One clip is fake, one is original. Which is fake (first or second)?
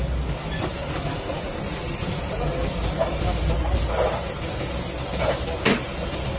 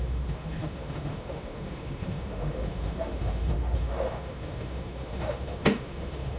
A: second